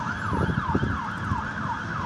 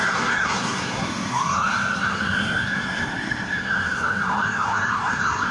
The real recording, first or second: first